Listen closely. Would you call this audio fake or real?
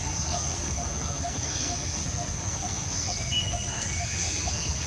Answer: fake